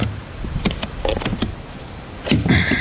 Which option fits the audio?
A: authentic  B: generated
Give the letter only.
B